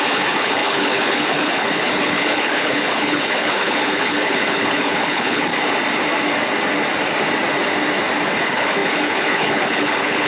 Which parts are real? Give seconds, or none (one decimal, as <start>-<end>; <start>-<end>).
5.5-8.4